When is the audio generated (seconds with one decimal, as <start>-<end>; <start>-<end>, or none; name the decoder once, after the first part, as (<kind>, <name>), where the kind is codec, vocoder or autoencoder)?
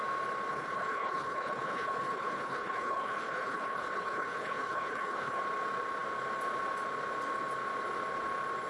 0.5-5.4 (codec, HILCodec)